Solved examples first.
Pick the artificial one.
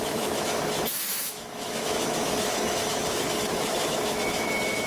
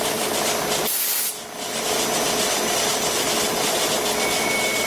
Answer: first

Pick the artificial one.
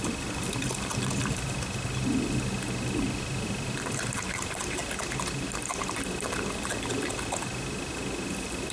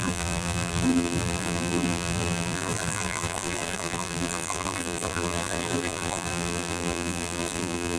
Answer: second